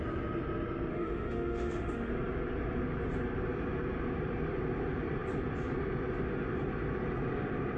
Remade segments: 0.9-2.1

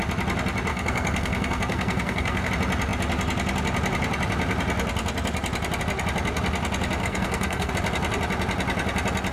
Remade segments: 0.7-2.5; 7.0-7.7

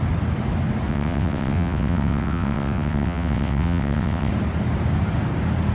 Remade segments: 0.9-4.3

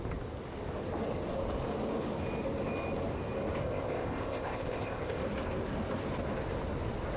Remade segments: 3.6-5.2

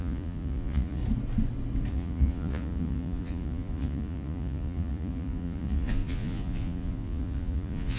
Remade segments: 0.0-1.0; 1.9-8.0